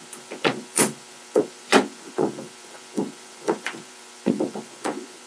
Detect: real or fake fake